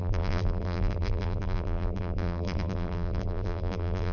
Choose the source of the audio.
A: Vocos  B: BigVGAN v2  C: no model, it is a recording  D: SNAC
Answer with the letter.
B